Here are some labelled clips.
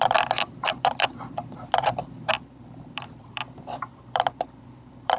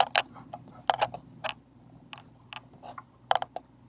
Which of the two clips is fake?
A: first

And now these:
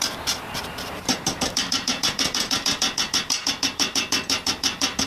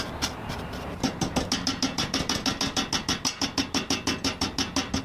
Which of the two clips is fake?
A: first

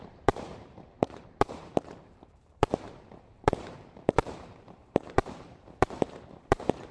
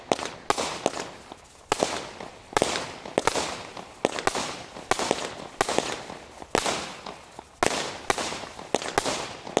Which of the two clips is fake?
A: first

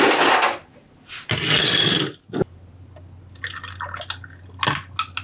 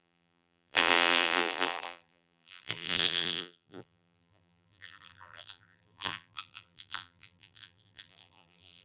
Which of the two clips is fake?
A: second